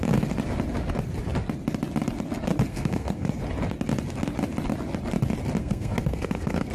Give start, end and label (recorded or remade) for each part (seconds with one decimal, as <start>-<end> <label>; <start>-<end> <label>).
0.0-2.7 recorded; 2.7-3.4 remade; 3.4-5.6 recorded; 5.6-6.7 remade